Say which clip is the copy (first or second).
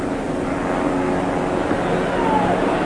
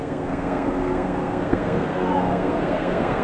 second